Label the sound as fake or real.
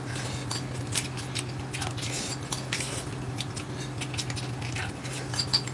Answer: real